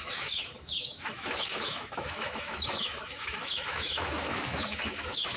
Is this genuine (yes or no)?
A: no